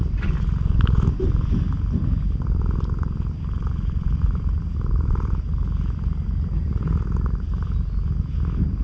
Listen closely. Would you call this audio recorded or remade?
recorded